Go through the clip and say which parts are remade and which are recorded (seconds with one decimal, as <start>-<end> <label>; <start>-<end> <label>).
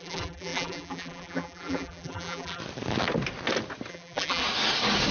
0.0-2.6 remade; 2.6-3.9 recorded; 3.9-4.4 remade; 4.4-5.1 recorded